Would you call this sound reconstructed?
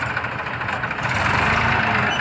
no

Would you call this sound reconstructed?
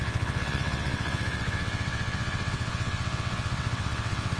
yes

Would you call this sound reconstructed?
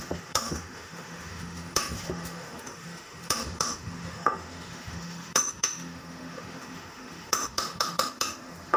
yes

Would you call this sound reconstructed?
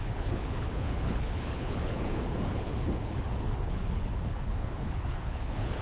yes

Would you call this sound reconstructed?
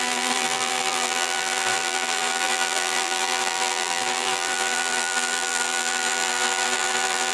yes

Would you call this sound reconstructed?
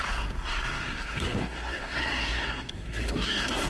yes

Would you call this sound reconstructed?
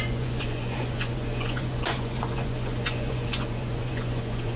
yes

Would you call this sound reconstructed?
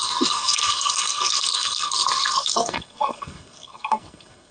yes